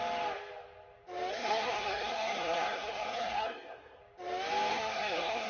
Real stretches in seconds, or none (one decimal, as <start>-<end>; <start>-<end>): 0.0-1.3; 4.0-4.7

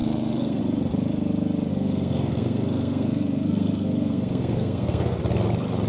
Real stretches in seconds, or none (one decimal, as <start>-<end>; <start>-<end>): 0.6-1.7; 5.2-5.9

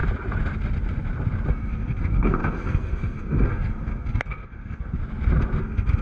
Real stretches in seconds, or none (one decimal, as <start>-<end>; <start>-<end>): 0.0-1.5; 5.0-5.6

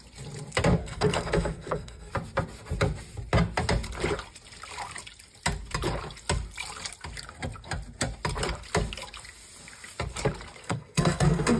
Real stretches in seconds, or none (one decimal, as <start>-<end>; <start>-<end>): 0.0-0.8; 2.1-10.6